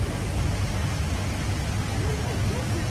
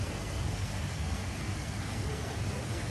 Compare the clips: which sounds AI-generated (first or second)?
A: second